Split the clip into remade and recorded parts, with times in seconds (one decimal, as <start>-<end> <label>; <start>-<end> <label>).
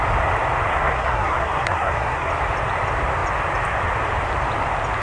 0.0-0.7 recorded; 0.7-2.3 remade; 2.3-5.0 recorded